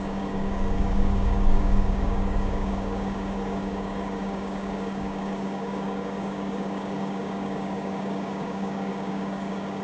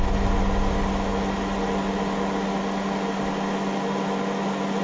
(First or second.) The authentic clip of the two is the second